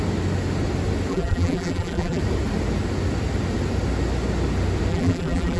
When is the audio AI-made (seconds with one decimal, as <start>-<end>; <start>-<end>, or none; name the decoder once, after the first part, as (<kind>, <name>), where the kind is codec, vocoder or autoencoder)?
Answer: 1.1-2.2 (vocoder, BigVGAN v2); 4.9-5.6